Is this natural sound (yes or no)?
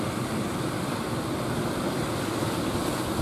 yes